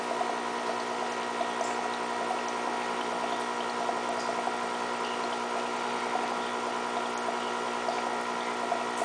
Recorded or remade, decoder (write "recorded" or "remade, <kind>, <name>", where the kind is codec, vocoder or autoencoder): recorded